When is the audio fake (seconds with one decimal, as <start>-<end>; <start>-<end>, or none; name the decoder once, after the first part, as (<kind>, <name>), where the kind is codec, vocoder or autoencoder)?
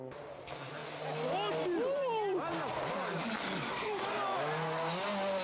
none